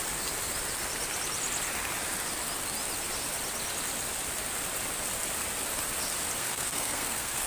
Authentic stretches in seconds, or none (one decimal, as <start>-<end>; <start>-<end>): 0.0-6.4